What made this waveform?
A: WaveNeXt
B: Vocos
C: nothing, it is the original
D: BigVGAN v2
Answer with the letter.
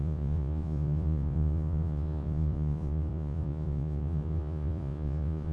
B